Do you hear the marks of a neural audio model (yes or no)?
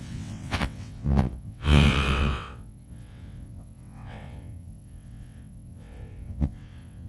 yes